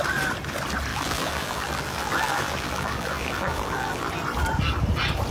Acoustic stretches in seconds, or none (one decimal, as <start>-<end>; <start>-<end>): 0.0-0.9; 4.1-5.3